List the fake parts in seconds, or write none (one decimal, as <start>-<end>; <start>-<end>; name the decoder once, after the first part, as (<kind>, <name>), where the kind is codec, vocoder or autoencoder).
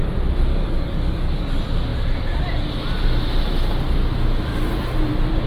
0.5-1.5 (codec, DAC)